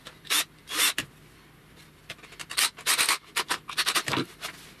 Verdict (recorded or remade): recorded